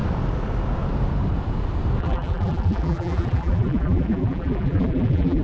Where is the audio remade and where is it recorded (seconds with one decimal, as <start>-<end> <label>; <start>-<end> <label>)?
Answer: 0.0-2.0 recorded; 2.0-5.4 remade